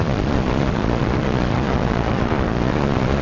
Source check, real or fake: fake